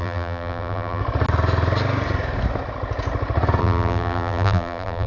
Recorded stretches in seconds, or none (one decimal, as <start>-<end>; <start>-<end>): 1.0-3.6